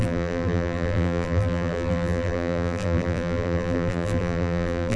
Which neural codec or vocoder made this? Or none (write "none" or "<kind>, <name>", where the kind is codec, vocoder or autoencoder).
vocoder, BigVGAN v2